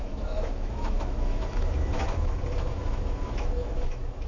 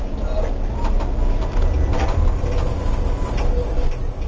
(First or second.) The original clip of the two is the second